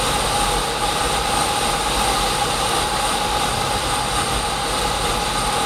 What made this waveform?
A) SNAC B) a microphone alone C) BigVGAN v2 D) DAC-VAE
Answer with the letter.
B